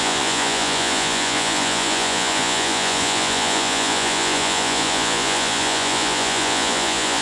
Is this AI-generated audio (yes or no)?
yes